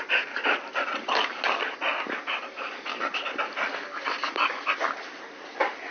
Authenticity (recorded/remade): recorded